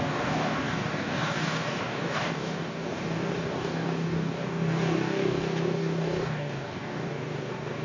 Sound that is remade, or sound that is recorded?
remade